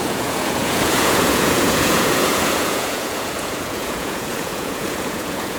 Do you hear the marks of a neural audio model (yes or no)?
yes